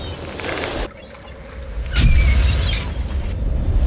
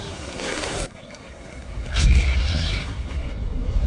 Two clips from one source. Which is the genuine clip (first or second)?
first